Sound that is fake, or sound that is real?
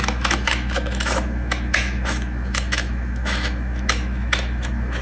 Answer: fake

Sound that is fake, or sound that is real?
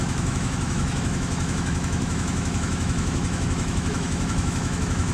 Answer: fake